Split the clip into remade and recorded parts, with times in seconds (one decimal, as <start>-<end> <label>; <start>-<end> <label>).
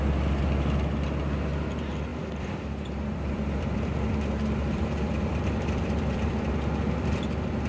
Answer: 0.0-2.1 recorded; 2.1-6.3 remade; 6.3-7.7 recorded